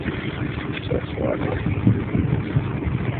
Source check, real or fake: real